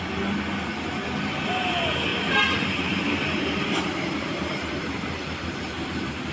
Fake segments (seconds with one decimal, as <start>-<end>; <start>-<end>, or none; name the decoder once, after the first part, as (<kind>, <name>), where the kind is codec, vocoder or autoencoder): 2.1-6.3 (vocoder, BigVGAN v2)